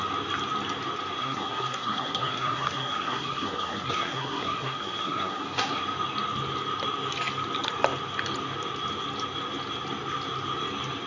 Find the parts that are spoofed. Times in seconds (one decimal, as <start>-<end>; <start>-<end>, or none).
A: 1.2-5.8

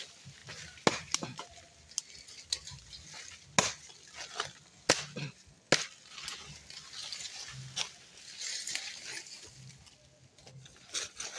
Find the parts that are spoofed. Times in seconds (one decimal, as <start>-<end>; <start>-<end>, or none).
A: none

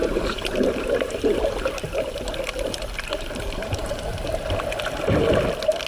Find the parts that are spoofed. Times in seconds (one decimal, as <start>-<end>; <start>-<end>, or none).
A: 0.0-2.1; 3.6-4.3

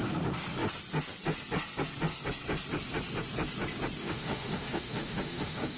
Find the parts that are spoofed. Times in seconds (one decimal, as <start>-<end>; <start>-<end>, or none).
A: 4.0-5.8

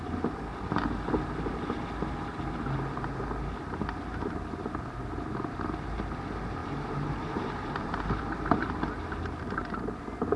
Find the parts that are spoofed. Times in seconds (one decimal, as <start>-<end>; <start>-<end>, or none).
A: 6.6-8.2

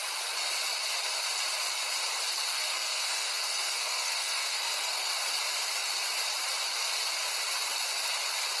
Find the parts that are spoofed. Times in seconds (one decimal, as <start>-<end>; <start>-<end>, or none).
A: 2.5-5.1

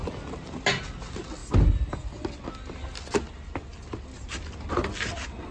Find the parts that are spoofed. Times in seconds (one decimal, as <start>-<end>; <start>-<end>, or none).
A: none